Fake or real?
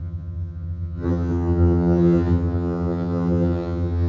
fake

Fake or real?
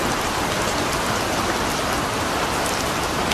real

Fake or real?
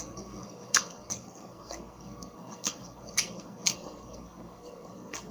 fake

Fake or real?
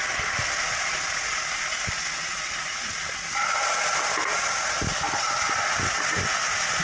real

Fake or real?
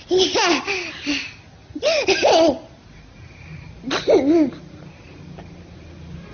real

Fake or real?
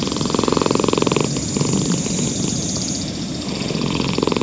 real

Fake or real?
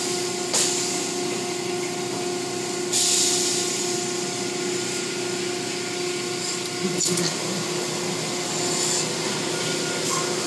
real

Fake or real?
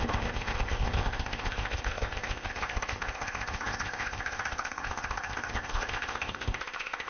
fake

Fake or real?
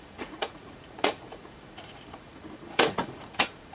fake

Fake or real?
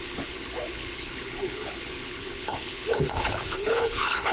fake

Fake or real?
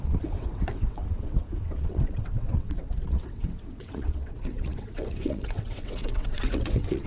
fake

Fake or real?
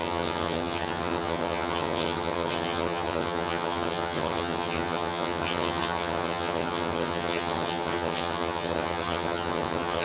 fake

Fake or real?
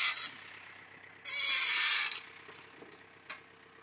real